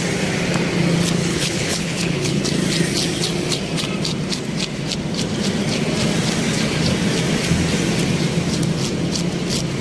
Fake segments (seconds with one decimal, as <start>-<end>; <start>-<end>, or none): 1.3-2.4